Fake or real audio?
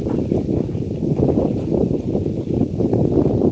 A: real